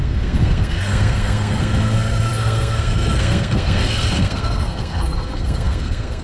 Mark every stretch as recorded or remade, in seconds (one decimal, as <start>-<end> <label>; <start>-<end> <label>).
0.0-6.2 remade